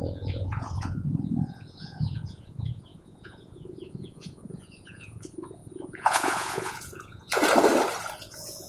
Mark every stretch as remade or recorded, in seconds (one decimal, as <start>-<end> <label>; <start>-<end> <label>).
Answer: 0.0-7.4 remade; 7.4-8.2 recorded; 8.2-8.7 remade